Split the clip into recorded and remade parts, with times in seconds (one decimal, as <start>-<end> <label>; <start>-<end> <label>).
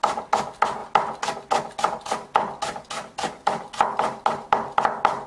0.0-5.3 recorded